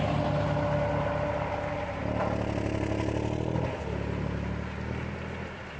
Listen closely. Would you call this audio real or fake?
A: real